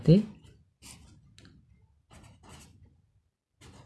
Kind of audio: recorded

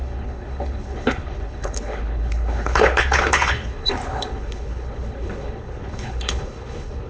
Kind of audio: remade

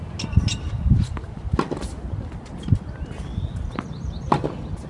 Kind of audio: recorded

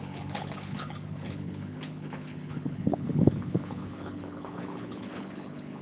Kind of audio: remade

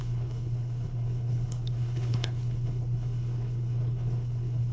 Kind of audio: remade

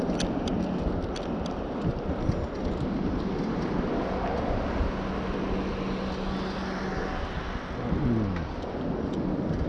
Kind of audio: recorded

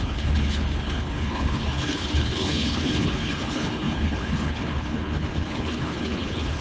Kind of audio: remade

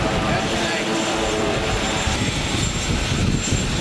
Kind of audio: recorded